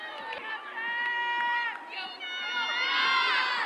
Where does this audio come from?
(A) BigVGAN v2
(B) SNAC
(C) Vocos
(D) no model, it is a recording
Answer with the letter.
D